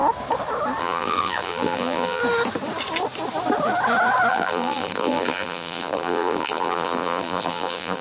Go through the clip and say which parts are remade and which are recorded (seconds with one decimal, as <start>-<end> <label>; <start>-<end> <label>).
0.0-0.8 recorded; 0.8-2.2 remade; 2.2-4.3 recorded; 4.3-8.0 remade